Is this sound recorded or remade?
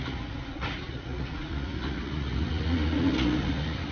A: remade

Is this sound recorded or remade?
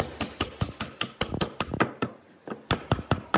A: recorded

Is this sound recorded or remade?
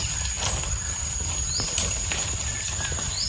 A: recorded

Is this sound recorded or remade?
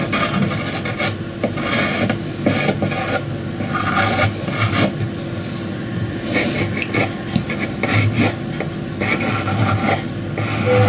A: recorded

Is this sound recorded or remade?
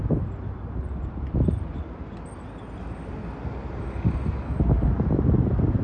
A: recorded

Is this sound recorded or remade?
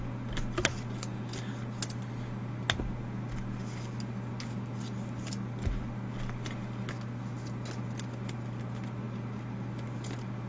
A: recorded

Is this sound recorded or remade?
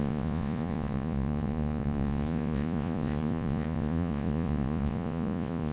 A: remade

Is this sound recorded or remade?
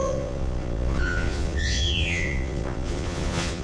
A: remade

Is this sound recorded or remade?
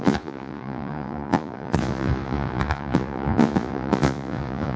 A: remade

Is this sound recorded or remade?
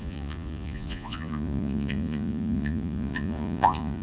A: remade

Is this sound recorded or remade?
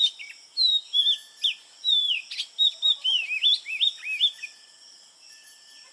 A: recorded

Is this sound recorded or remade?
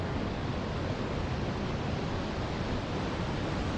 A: recorded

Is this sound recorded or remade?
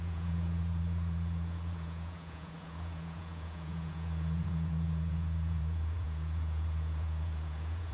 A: remade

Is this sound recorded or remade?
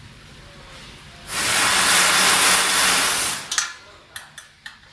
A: recorded